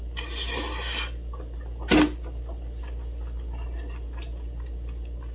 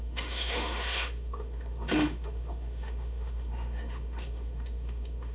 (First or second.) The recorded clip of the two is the first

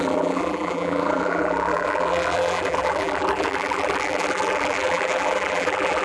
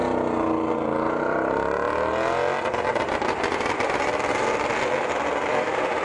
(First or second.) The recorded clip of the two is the second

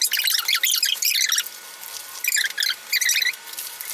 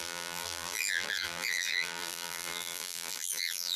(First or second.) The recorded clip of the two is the first